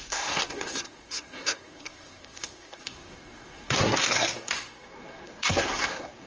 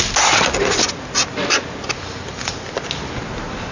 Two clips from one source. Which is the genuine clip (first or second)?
second